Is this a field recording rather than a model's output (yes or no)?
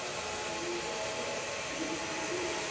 yes